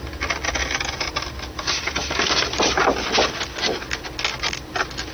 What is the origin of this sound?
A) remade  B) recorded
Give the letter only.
B